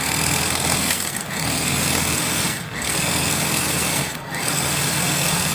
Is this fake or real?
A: fake